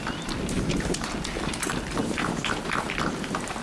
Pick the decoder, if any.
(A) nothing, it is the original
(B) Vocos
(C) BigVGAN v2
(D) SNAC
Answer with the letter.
A